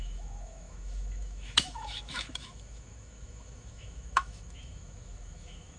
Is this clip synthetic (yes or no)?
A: yes